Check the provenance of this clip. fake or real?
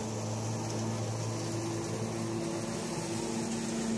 real